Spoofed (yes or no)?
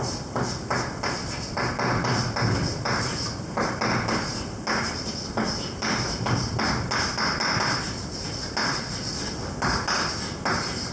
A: no